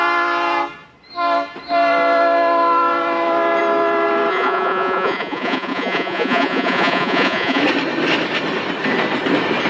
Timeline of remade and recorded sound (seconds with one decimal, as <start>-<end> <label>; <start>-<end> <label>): 0.0-4.3 recorded; 4.3-7.6 remade; 7.6-9.7 recorded